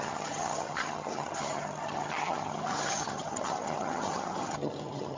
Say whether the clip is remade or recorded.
remade